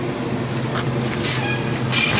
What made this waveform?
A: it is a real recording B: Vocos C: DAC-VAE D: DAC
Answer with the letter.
A